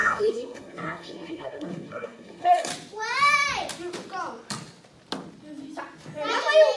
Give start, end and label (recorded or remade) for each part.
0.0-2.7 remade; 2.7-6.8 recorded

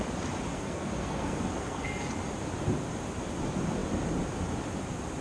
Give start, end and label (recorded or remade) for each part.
0.0-0.5 recorded; 0.5-2.1 remade; 2.1-5.2 recorded

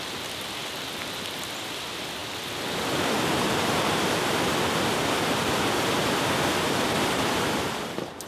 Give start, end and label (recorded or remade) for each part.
0.0-8.3 recorded

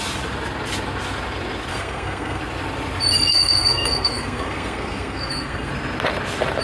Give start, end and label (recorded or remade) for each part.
0.0-1.7 recorded; 1.7-2.4 remade; 2.4-3.3 recorded; 3.3-5.7 remade; 5.7-6.6 recorded

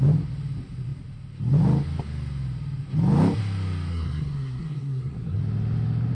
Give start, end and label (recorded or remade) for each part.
0.0-3.9 recorded; 3.9-5.4 remade; 5.4-6.1 recorded

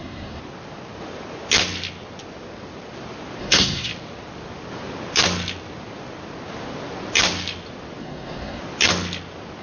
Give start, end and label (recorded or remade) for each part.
0.0-0.4 remade; 0.4-3.4 recorded; 3.4-3.9 remade; 3.9-8.0 recorded; 8.0-8.6 remade; 8.6-9.6 recorded

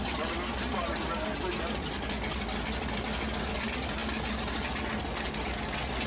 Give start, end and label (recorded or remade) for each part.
0.0-6.1 recorded

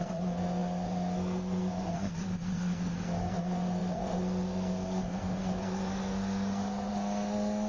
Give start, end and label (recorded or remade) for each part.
0.0-7.7 remade